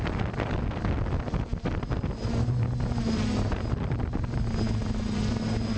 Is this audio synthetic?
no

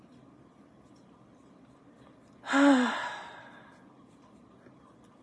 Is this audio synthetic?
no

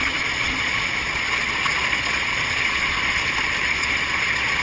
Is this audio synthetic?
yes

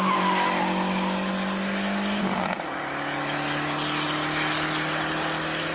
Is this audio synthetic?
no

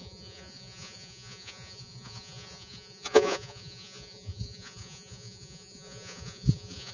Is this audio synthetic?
yes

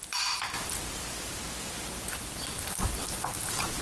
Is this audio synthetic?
no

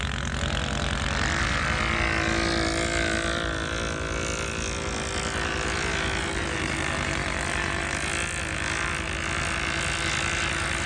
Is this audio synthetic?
no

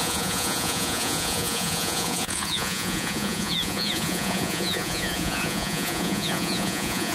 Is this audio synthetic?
yes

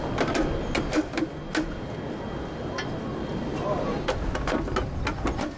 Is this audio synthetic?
no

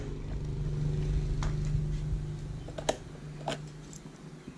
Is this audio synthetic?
no